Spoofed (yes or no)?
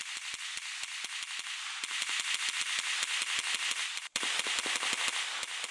no